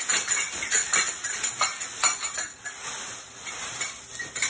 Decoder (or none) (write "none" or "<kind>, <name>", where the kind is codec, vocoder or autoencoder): none